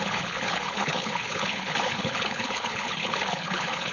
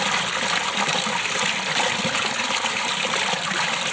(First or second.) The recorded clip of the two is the second